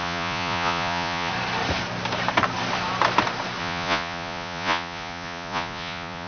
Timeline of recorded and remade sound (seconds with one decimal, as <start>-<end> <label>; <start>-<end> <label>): 0.0-1.3 remade; 1.3-3.6 recorded; 3.6-6.3 remade